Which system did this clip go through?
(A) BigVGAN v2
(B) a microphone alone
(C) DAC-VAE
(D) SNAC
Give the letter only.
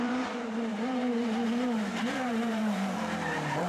A